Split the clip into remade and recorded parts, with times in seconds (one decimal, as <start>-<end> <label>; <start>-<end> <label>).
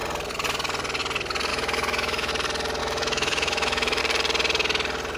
0.0-1.5 recorded; 1.5-2.3 remade; 2.3-2.8 recorded; 2.8-4.0 remade; 4.0-5.2 recorded